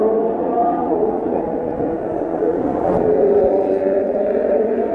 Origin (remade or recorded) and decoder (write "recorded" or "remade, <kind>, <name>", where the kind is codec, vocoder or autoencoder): remade, vocoder, Vocos